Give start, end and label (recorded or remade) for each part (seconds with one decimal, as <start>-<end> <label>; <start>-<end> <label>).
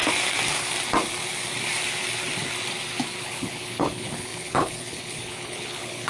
0.0-3.2 recorded; 3.2-6.1 remade